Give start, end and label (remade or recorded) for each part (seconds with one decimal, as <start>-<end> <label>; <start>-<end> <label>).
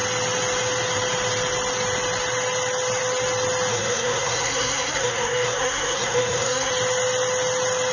0.0-3.7 recorded; 3.7-6.7 remade; 6.7-7.9 recorded